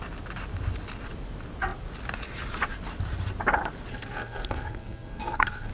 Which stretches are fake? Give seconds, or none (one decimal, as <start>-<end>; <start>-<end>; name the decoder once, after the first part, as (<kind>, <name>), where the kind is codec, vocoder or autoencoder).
3.9-5.7 (codec, SNAC)